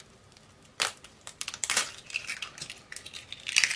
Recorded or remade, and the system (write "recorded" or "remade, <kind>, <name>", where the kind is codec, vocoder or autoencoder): remade, vocoder, BigVGAN v2